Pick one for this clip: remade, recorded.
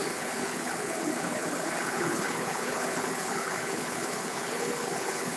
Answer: remade